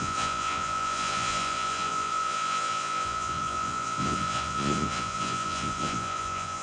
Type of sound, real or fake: fake